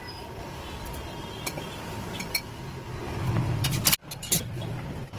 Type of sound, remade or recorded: recorded